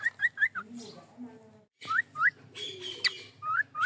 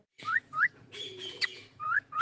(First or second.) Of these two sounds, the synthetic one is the second